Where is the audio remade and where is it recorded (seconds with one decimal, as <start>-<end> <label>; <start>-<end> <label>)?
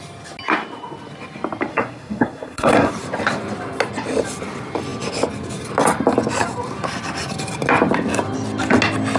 0.0-1.7 recorded; 1.7-2.9 remade; 2.9-9.2 recorded